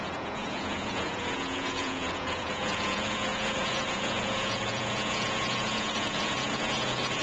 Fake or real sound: fake